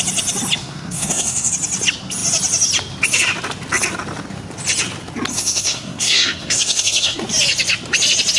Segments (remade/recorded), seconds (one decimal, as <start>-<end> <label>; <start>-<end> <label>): 0.0-0.6 recorded; 0.6-1.5 remade; 1.5-5.3 recorded; 5.3-7.2 remade; 7.2-8.4 recorded